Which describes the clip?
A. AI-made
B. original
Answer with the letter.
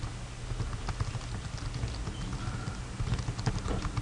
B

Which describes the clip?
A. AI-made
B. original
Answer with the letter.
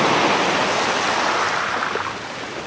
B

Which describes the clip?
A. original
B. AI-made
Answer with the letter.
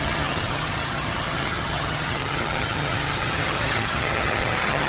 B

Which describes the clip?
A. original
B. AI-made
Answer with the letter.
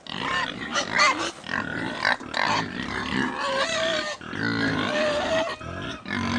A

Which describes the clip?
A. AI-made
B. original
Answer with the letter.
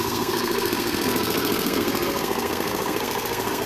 A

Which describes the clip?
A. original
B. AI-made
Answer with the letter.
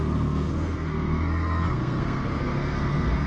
B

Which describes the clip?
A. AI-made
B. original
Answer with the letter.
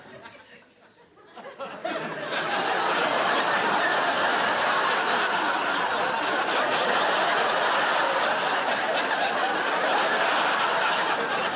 B